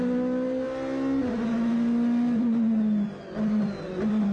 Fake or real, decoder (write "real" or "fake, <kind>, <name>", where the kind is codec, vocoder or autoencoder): real